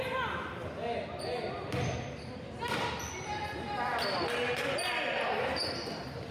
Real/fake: real